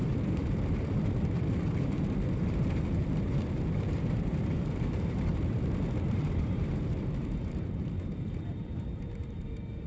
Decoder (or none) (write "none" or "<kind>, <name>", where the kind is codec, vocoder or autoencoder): vocoder, BigVGAN v2